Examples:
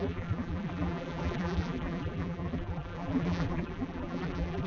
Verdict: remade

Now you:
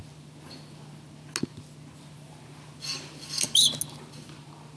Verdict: recorded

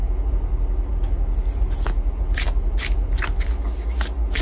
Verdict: recorded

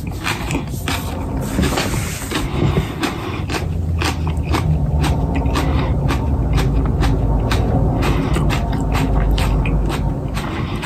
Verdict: recorded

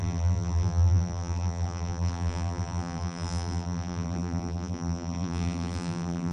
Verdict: remade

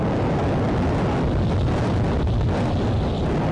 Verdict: recorded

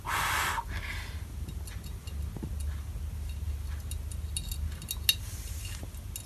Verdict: recorded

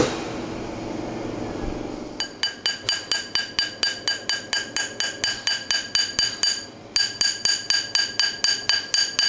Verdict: recorded